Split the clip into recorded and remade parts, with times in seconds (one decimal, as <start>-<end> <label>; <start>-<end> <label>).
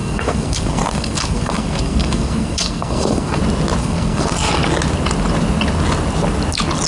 0.0-3.4 remade; 3.4-3.8 recorded; 3.8-4.5 remade; 4.5-6.9 recorded